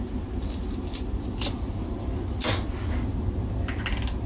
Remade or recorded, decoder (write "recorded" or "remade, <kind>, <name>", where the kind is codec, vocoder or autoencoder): recorded